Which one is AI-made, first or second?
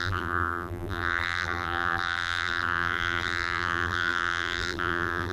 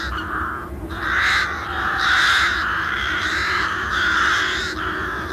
first